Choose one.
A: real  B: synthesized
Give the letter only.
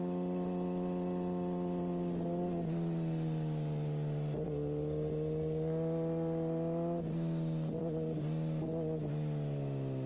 A